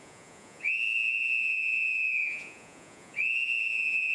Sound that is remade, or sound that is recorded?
remade